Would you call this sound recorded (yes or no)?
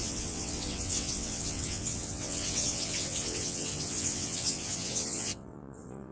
no